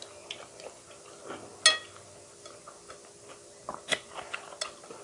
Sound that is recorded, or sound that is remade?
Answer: recorded